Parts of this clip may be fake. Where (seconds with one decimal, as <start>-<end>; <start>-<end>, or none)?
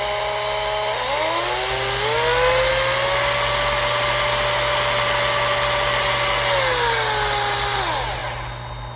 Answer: none